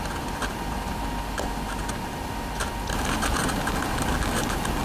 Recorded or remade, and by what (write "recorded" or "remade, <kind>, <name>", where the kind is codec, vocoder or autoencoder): recorded